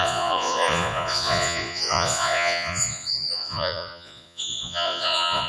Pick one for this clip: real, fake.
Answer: fake